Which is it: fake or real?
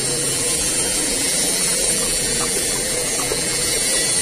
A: fake